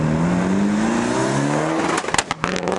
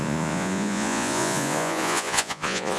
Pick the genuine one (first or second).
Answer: first